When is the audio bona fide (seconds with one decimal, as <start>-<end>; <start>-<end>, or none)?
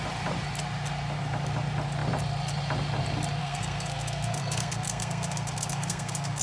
0.0-3.4